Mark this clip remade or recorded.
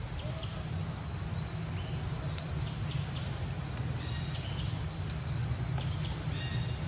recorded